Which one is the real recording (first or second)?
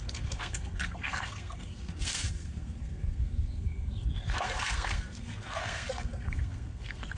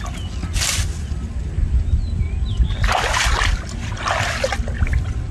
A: second